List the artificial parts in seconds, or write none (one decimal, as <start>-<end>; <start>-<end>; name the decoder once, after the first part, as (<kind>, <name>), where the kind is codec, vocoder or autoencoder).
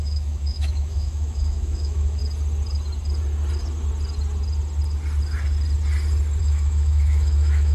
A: 0.0-2.2 (autoencoder, DAC-VAE); 6.4-7.7